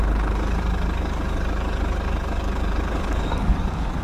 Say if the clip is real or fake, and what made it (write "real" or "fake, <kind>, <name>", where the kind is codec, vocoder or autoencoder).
fake, codec, DAC